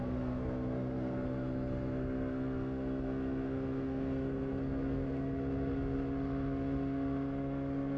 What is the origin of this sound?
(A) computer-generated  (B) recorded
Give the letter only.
A